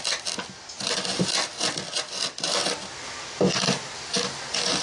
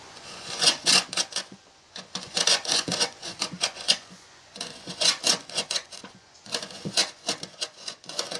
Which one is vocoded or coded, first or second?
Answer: second